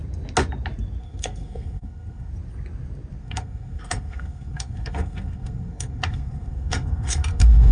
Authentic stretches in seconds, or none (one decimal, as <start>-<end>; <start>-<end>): 0.0-1.0; 2.3-3.2